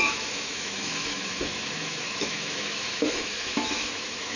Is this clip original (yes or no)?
no